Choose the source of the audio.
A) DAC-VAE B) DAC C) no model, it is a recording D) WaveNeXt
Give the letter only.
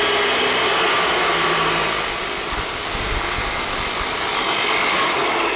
C